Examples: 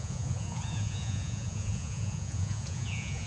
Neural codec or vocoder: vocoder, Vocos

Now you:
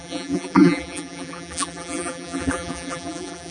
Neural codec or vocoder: vocoder, BigVGAN v2